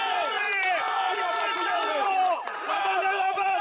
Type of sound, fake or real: fake